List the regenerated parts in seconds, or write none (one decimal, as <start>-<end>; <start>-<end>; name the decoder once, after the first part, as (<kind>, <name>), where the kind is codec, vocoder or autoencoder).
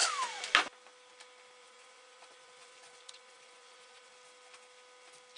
1.6-4.1 (vocoder, Vocos)